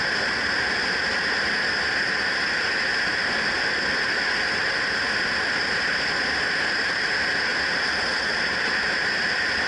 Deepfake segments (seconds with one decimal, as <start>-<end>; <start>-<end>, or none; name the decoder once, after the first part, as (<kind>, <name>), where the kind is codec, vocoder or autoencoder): none